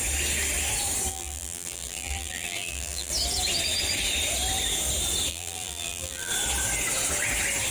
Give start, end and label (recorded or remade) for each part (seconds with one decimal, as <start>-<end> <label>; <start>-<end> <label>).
0.0-1.1 recorded; 1.1-3.1 remade; 3.1-5.3 recorded; 5.3-6.3 remade; 6.3-7.7 recorded